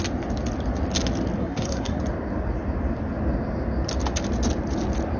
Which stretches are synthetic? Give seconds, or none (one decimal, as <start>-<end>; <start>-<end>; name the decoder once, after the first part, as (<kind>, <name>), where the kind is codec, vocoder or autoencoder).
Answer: 1.4-2.0 (codec, SNAC)